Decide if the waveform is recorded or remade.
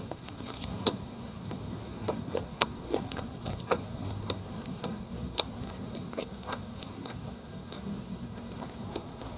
remade